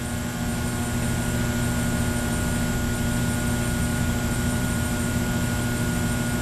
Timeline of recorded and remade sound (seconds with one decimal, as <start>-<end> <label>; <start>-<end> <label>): 0.0-3.9 recorded; 3.9-5.2 remade; 5.2-6.4 recorded